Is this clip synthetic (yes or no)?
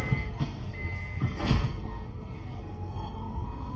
yes